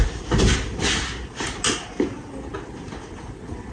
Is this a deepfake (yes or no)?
no